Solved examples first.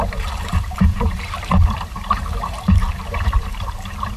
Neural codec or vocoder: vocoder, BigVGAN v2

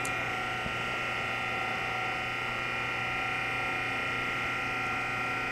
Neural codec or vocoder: none